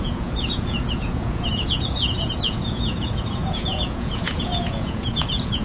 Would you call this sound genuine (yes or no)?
no